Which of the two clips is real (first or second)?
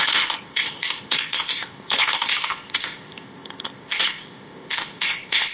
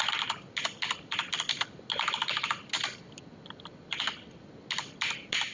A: second